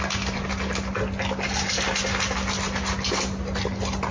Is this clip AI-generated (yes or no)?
no